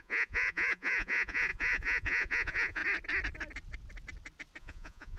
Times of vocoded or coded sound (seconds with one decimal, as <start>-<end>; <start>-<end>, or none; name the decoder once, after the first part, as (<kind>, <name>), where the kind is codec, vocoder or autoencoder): 0.0-2.8 (vocoder, Vocos); 4.6-5.2